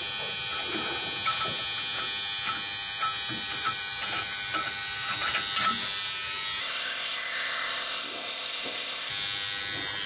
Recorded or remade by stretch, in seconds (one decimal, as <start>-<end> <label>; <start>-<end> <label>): 0.0-6.6 recorded; 6.6-9.1 remade; 9.1-10.1 recorded